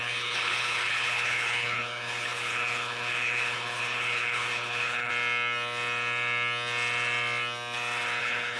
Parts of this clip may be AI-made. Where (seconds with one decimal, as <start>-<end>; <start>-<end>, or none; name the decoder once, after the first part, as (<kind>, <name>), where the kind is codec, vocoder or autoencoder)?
0.0-5.1 (codec, HILCodec); 8.2-8.6